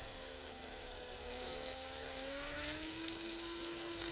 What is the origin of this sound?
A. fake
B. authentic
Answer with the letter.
A